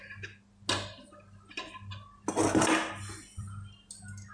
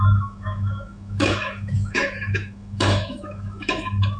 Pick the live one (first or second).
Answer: first